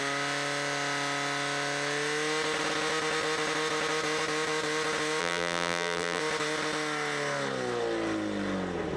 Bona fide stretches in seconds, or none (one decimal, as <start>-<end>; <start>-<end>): 0.0-5.2; 6.2-9.0